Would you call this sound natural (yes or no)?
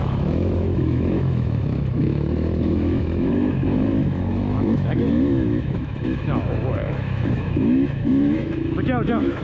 no